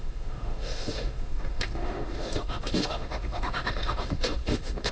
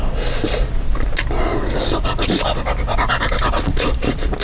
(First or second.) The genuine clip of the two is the second